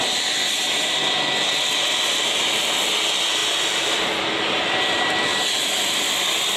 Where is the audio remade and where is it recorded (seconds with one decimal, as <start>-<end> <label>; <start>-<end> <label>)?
0.0-1.0 remade; 1.0-1.6 recorded; 1.6-6.6 remade